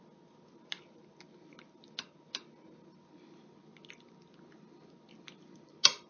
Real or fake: real